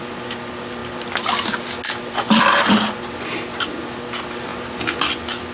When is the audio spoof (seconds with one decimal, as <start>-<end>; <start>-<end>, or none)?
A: 0.0-0.8; 2.0-4.5; 5.0-5.5